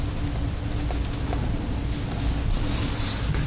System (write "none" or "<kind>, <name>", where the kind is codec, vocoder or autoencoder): none